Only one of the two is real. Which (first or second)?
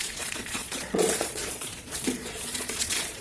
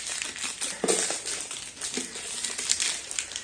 second